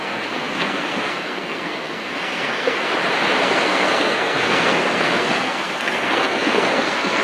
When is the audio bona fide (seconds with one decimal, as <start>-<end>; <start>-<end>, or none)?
2.9-3.4